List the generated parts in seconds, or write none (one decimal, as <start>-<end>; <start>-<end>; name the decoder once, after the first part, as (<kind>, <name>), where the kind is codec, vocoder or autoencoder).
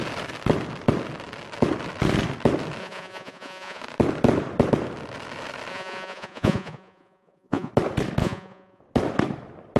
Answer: 2.8-3.8 (vocoder, Vocos); 5.7-7.7; 8.2-8.8